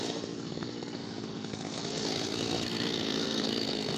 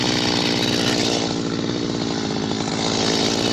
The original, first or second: second